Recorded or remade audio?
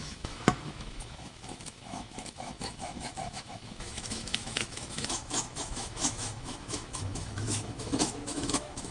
remade